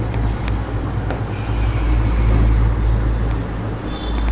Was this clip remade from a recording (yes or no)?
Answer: no